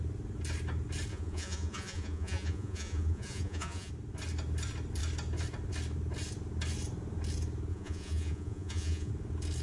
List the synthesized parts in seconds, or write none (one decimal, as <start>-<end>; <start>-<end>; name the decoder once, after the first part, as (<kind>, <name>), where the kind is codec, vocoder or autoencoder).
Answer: 1.1-3.9 (vocoder, Vocos); 7.7-9.1